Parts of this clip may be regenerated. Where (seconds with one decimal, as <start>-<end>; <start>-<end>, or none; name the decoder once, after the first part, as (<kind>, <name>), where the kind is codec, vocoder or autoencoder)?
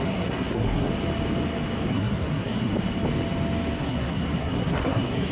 0.0-0.9 (codec, SNAC); 1.9-2.7; 3.8-5.3